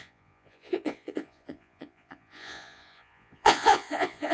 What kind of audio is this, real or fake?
fake